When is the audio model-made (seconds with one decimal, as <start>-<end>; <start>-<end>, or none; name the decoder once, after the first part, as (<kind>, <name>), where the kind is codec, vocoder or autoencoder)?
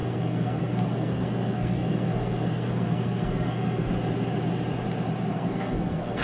0.0-3.9 (codec, SNAC); 5.3-6.2